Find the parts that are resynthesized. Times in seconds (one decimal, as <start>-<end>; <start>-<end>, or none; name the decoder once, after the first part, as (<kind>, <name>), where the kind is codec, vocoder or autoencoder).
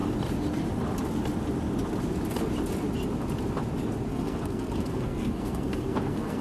4.1-6.4 (codec, SNAC)